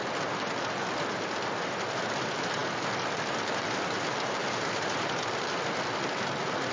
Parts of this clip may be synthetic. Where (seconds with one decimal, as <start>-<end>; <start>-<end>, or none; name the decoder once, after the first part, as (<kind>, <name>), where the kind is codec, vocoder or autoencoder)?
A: 4.4-5.4 (vocoder, BigVGAN v2)